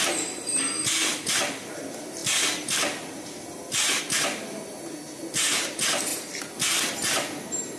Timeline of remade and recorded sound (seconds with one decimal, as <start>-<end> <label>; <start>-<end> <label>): 0.0-7.8 recorded